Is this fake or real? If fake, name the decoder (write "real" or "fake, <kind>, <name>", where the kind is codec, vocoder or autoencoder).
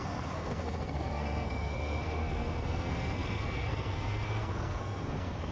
fake, codec, SNAC